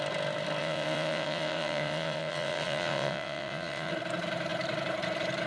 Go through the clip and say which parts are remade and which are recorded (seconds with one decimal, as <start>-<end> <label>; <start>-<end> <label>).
0.0-0.6 recorded; 0.6-3.9 remade; 3.9-5.5 recorded